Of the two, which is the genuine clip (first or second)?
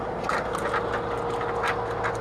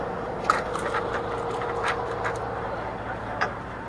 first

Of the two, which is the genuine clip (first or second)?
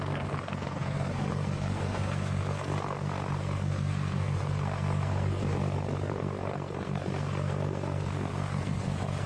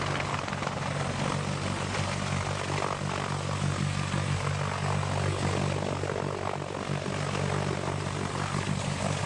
second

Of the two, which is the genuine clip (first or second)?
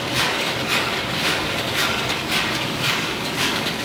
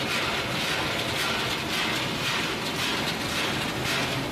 second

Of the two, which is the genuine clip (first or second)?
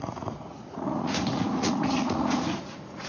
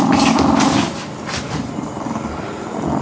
second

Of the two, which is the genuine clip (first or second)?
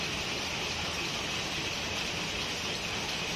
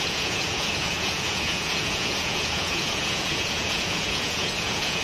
first